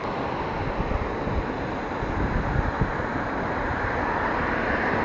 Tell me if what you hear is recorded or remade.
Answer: recorded